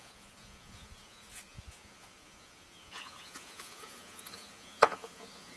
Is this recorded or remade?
remade